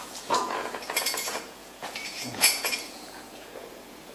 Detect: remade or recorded remade